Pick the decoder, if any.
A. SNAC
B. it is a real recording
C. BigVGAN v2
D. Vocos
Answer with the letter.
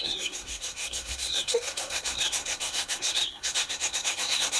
A